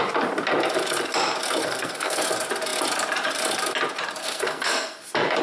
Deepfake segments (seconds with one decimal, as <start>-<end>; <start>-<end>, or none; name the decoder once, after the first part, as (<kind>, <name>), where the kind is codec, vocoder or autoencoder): 1.6-2.3 (codec, SNAC); 4.2-5.0